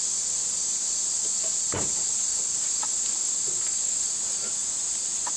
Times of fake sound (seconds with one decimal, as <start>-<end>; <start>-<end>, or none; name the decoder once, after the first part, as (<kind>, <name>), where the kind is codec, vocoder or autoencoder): none